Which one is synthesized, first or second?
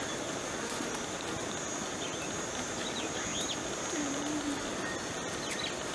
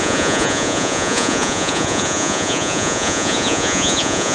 second